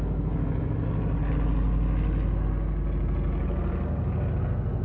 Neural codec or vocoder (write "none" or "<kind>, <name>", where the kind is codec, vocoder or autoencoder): none